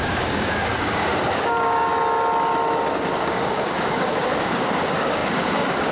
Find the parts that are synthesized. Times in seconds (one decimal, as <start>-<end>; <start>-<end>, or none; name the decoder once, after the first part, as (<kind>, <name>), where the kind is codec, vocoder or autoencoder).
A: 0.0-1.9 (codec, DAC); 3.0-5.9